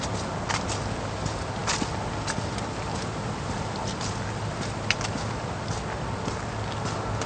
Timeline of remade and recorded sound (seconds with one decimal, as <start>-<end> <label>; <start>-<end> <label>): 0.0-7.3 recorded